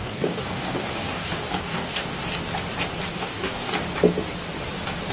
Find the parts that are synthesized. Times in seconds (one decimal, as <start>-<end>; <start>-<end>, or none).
0.0-2.3; 3.1-3.7